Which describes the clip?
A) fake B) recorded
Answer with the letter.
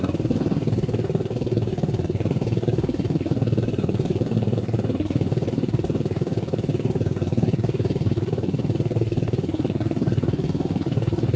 A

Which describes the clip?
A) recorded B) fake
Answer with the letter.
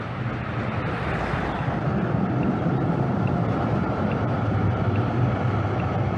A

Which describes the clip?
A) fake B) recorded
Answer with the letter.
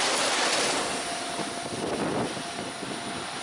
B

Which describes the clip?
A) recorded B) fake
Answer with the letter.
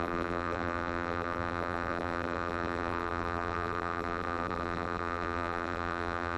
B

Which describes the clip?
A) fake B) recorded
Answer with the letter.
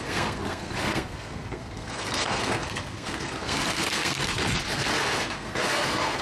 A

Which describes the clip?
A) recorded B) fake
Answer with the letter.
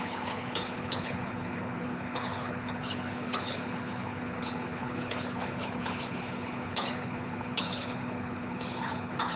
B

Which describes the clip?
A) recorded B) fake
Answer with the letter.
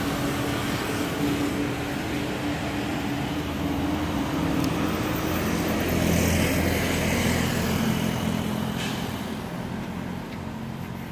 A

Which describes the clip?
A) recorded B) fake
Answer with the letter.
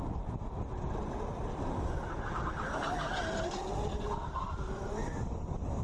A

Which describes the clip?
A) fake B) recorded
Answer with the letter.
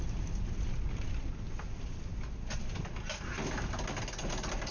B